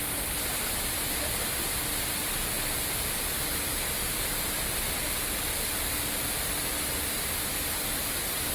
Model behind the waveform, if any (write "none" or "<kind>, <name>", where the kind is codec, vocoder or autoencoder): none